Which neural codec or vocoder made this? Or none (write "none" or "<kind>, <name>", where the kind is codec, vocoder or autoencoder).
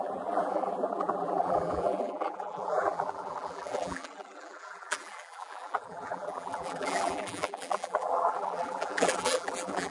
vocoder, BigVGAN v2